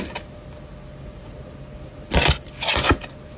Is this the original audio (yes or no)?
yes